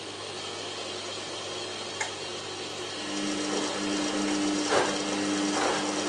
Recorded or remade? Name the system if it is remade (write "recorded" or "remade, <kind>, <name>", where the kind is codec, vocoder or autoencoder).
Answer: recorded